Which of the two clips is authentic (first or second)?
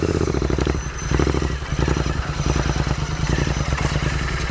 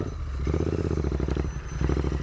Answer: second